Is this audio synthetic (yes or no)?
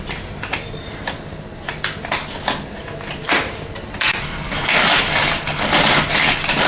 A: no